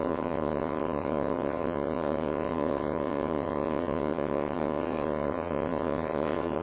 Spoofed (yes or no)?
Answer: yes